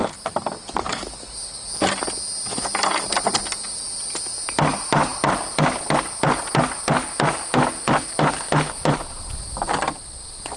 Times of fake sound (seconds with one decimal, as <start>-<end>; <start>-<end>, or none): 0.0-0.6

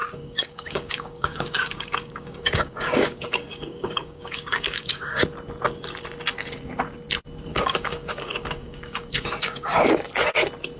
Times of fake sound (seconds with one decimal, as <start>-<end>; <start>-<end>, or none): 0.0-5.2; 7.5-9.9